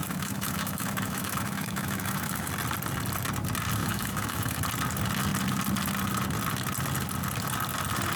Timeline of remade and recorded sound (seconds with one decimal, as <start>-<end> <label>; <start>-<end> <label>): 0.0-2.5 remade; 2.5-3.8 recorded; 3.8-4.6 remade; 4.6-8.2 recorded

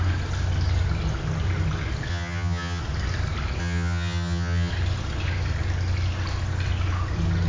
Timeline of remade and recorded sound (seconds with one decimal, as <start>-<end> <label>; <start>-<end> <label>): 0.0-2.1 recorded; 2.1-2.8 remade; 2.8-3.6 recorded; 3.6-4.7 remade; 4.7-7.5 recorded

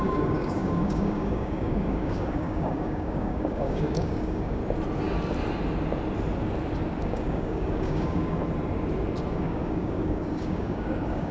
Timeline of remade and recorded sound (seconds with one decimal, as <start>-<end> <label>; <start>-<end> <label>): 0.0-4.6 remade; 4.6-7.0 recorded; 7.0-8.4 remade; 8.4-9.3 recorded; 9.3-11.3 remade

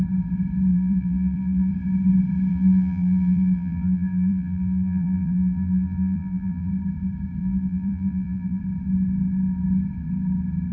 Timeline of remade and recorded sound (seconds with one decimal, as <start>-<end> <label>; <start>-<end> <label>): 0.0-0.7 recorded; 0.7-1.7 remade; 1.7-2.5 recorded; 2.5-6.7 remade; 6.7-7.4 recorded; 7.4-8.6 remade; 8.6-10.7 recorded

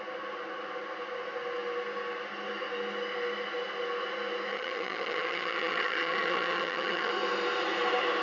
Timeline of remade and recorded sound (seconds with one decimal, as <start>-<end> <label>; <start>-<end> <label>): 0.0-4.5 recorded; 4.5-7.1 remade; 7.1-8.2 recorded

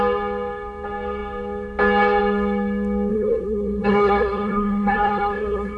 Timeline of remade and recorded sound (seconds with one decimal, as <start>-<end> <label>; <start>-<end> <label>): 0.0-3.1 recorded; 3.1-5.8 remade